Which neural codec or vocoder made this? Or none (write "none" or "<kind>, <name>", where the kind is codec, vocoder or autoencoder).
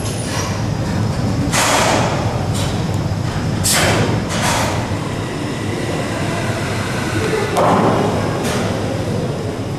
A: none